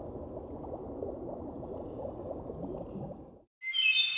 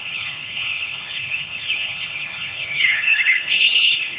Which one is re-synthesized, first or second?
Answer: second